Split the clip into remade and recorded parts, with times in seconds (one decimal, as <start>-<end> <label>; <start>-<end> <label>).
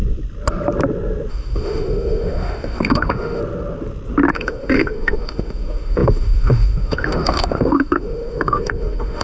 0.0-1.3 recorded; 1.3-3.4 remade; 3.4-4.3 recorded; 4.3-9.2 remade